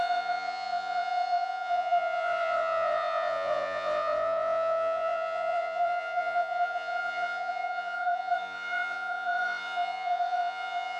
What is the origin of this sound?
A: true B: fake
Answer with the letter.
B